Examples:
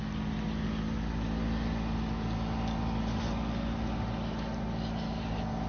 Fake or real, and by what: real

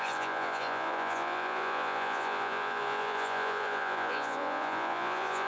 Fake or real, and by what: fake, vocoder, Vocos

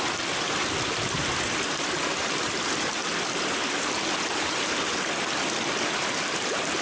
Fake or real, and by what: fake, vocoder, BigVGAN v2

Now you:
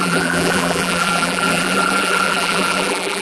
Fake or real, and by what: fake, vocoder, BigVGAN v2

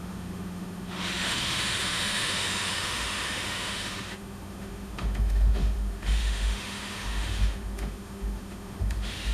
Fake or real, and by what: fake, autoencoder, DAC-VAE